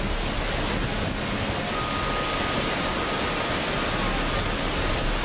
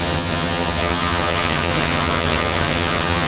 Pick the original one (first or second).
first